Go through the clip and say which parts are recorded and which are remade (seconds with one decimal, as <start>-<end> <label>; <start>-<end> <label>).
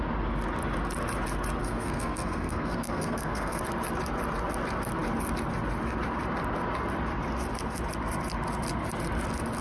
0.0-1.6 recorded; 1.6-3.6 remade; 3.6-9.6 recorded